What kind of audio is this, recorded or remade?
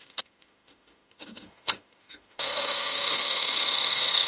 remade